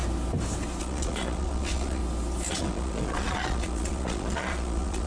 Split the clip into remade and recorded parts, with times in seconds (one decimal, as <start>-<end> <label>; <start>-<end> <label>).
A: 0.0-0.8 recorded; 0.8-2.0 remade; 2.0-2.5 recorded; 2.5-5.1 remade